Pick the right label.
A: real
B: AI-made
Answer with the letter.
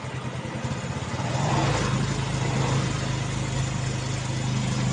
A